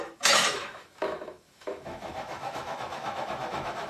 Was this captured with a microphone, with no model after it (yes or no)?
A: no